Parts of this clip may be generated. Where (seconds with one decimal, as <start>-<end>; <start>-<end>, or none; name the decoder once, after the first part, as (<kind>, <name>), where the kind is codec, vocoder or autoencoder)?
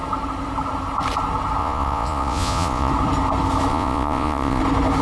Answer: 1.6-2.9 (vocoder, Vocos); 3.7-4.6